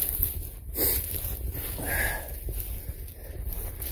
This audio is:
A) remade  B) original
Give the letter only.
B